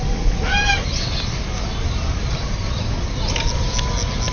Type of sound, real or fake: real